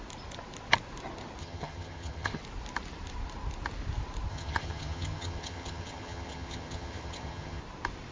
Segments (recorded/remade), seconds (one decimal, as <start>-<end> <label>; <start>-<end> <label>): 0.0-1.4 recorded; 1.4-2.4 remade; 2.4-4.3 recorded; 4.3-7.6 remade; 7.6-8.1 recorded